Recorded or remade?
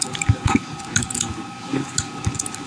remade